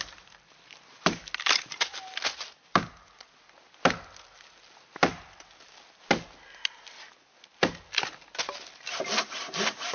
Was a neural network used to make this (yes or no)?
no